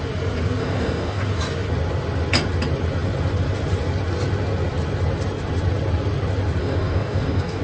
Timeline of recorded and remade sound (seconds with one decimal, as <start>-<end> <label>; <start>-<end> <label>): 0.0-0.6 recorded; 0.6-1.2 remade; 1.2-6.6 recorded; 6.6-7.6 remade